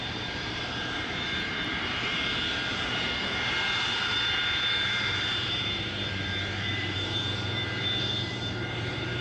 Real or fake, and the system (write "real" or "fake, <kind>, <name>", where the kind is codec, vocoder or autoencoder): fake, vocoder, BigVGAN v2